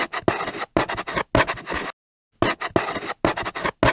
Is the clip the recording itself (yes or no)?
yes